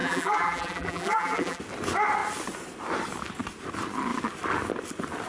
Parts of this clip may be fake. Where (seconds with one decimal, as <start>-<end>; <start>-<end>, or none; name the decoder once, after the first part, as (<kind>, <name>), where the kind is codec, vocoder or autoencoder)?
0.0-1.6 (vocoder, BigVGAN v2)